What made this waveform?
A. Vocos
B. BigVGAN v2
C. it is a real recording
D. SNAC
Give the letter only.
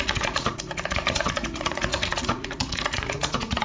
A